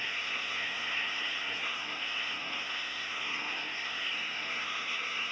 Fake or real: fake